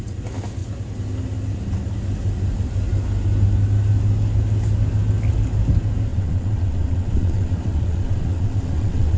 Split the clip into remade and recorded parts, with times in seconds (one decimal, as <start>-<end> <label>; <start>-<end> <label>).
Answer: 0.0-6.1 recorded; 6.1-9.2 remade